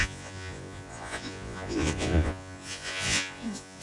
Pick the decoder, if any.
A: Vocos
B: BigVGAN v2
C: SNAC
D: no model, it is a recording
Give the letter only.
A